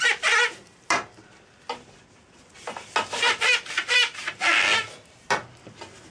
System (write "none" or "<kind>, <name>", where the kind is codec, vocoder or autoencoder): none